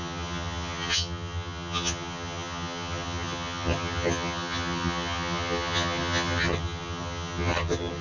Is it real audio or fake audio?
fake